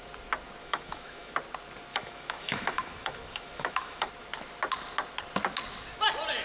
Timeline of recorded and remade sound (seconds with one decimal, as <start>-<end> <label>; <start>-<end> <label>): 0.0-0.6 recorded; 0.6-1.3 remade; 1.3-1.9 recorded; 1.9-4.1 remade; 4.1-6.4 recorded